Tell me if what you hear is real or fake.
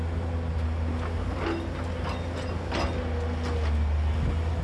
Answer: real